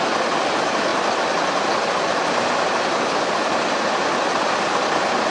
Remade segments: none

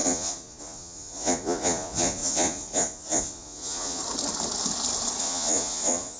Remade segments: 0.0-4.0 (vocoder, Vocos); 5.2-6.2

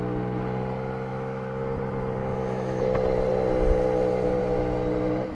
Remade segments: 1.1-1.6 (autoencoder, DAC-VAE); 2.2-2.8